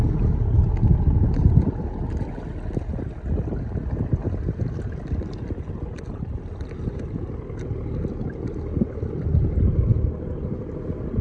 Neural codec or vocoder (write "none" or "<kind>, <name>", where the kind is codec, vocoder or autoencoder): none